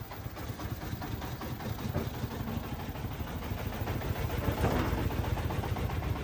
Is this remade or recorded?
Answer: recorded